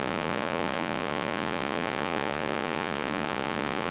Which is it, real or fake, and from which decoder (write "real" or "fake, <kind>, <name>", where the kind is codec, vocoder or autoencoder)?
fake, vocoder, Vocos